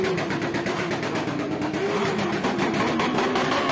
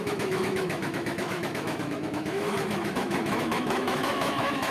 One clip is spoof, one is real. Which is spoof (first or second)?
second